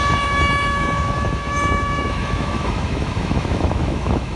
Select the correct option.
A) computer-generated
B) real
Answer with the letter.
A